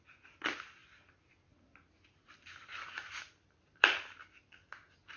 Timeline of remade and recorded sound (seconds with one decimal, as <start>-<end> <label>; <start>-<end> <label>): 0.0-5.2 recorded